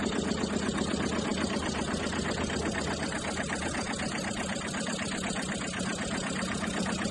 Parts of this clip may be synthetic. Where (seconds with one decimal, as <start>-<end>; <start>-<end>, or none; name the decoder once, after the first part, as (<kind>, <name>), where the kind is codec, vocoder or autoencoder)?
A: none